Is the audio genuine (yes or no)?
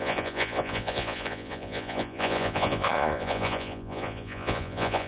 no